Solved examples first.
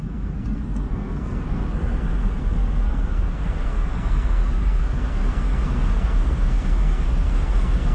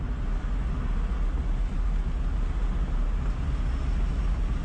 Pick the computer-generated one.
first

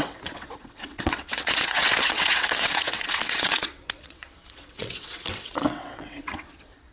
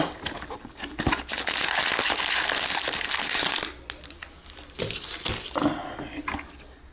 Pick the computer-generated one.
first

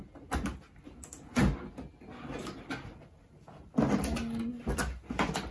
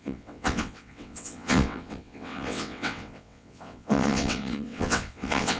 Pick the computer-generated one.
second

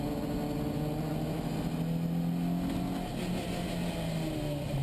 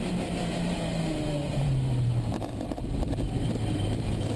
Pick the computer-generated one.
second